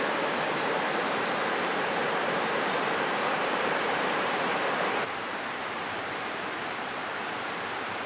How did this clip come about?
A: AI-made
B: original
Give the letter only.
A